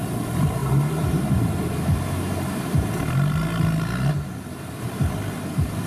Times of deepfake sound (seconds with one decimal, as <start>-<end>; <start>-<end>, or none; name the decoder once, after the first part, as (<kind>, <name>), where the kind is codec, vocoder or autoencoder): none